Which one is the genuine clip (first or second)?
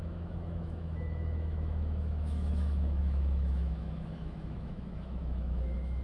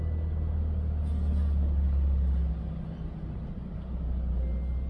second